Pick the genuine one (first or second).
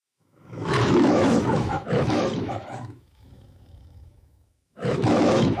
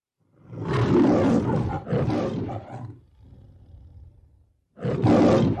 second